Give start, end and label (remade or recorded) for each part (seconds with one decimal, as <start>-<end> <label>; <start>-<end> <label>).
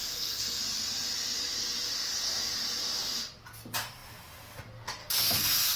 0.0-0.6 remade; 0.6-5.0 recorded; 5.0-5.8 remade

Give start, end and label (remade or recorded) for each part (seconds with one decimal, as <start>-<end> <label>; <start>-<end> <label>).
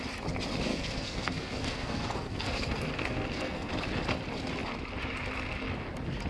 0.0-0.7 recorded; 0.7-3.7 remade; 3.7-6.3 recorded